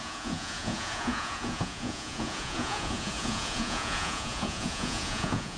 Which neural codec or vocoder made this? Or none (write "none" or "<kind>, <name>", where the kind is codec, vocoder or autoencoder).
vocoder, Vocos